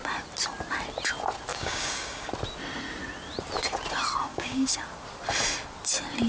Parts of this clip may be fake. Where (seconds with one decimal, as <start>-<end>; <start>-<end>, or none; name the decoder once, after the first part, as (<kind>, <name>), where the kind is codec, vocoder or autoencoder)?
1.5-2.3 (codec, DAC); 4.3-4.8